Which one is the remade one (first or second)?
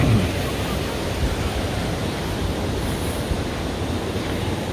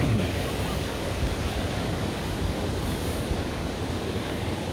second